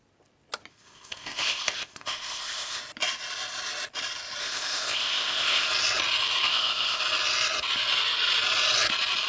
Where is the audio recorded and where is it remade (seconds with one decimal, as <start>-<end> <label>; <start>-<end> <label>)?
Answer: 0.0-0.7 recorded; 0.7-2.8 remade; 2.8-4.4 recorded; 4.4-5.7 remade; 5.7-6.4 recorded; 6.4-7.0 remade; 7.0-9.3 recorded